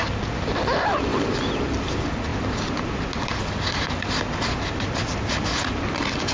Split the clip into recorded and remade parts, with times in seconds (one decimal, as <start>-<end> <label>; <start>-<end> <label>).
0.0-1.1 recorded; 1.1-1.9 remade; 1.9-6.3 recorded